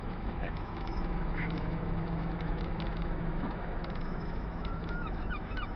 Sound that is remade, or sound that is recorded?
remade